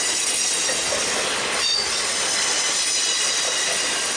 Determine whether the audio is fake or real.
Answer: real